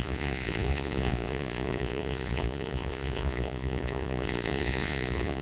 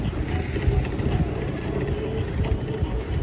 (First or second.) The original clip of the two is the second